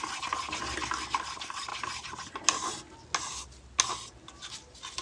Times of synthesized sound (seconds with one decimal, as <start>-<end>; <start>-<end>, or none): none